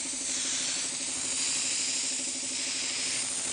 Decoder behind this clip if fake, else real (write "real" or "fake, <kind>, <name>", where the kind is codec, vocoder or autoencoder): real